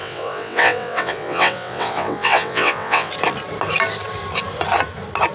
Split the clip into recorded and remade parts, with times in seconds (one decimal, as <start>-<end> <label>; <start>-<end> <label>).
0.0-3.1 remade; 3.1-5.3 recorded